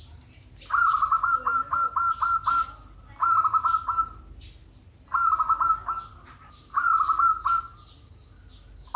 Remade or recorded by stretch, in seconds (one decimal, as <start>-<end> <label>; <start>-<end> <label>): 0.0-9.0 recorded